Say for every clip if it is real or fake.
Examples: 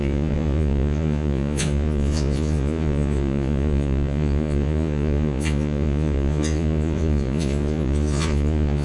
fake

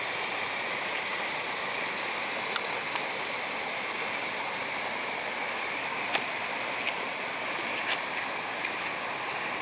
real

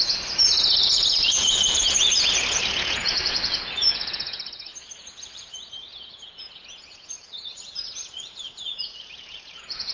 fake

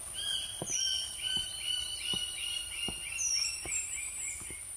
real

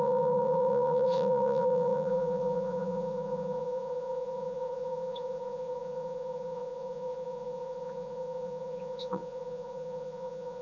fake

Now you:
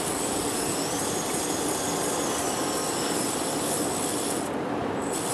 real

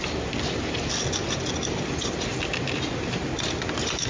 real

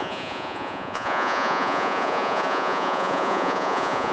fake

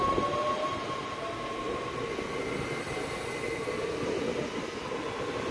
real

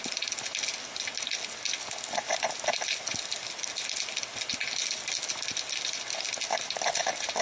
real